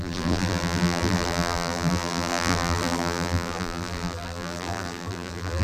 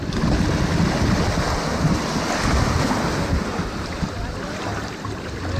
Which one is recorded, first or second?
second